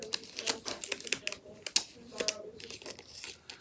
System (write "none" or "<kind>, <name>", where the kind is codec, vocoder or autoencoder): none